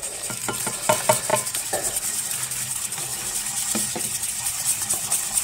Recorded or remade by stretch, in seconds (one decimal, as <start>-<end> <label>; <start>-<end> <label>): 0.0-1.3 remade; 1.3-2.3 recorded; 2.3-3.1 remade; 3.1-5.4 recorded